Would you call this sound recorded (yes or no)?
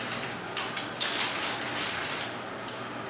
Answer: yes